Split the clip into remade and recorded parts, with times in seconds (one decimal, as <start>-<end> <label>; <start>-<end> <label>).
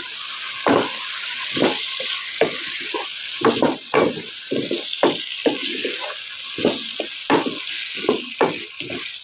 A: 0.0-5.8 remade; 5.8-8.3 recorded; 8.3-9.2 remade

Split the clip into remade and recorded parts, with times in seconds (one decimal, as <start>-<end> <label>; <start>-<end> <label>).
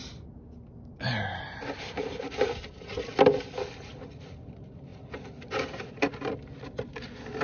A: 0.0-7.4 recorded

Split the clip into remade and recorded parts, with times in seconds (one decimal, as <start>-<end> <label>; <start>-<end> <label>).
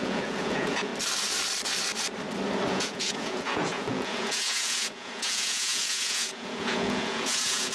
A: 0.0-0.9 remade; 0.9-2.7 recorded; 2.7-7.7 remade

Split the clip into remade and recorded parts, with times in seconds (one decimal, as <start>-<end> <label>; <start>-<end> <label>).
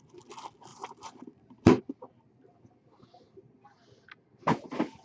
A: 0.0-0.7 recorded; 0.7-1.8 remade; 1.8-5.0 recorded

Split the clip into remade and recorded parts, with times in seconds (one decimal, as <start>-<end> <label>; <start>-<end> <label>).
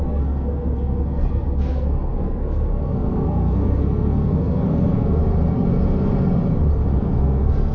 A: 0.0-5.2 remade; 5.2-7.0 recorded; 7.0-7.7 remade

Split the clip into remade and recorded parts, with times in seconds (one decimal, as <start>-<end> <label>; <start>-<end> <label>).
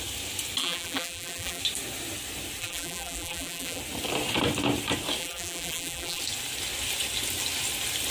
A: 0.0-0.6 recorded; 0.6-1.6 remade; 1.6-2.6 recorded; 2.6-3.8 remade; 3.8-5.2 recorded; 5.2-6.2 remade; 6.2-8.1 recorded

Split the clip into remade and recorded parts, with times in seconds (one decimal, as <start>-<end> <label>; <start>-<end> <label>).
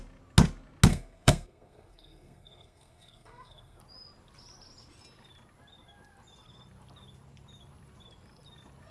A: 0.0-0.9 recorded; 0.9-3.8 remade; 3.8-8.9 recorded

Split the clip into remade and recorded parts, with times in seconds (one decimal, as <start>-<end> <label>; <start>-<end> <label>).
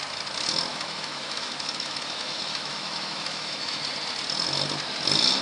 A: 0.0-0.7 recorded; 0.7-3.8 remade; 3.8-5.4 recorded